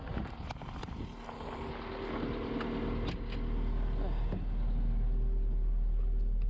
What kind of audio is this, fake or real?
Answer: real